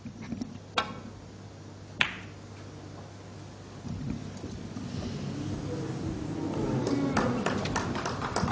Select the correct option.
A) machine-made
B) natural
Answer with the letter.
B